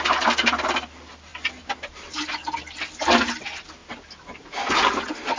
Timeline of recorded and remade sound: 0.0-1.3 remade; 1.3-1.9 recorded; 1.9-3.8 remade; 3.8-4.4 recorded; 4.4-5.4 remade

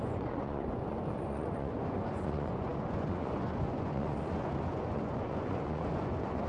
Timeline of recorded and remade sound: 0.0-6.5 remade